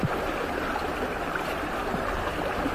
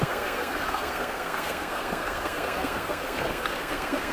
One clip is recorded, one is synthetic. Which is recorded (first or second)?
first